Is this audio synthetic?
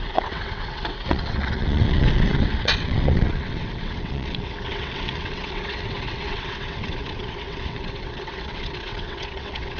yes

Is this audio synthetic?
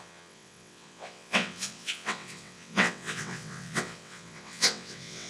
yes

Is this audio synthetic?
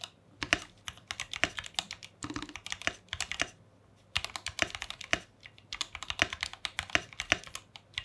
no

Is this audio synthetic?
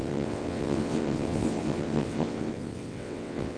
yes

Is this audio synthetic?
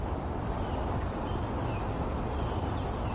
no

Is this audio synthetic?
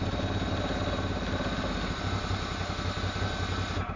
no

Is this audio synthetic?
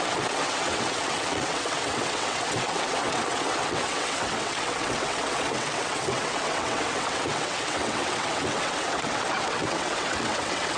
yes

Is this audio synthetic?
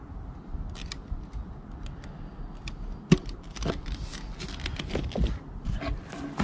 no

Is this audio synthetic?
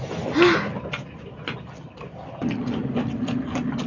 no